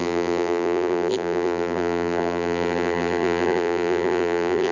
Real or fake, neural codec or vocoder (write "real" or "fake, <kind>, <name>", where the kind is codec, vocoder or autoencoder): fake, vocoder, BigVGAN v2